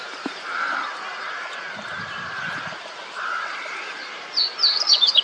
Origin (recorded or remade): remade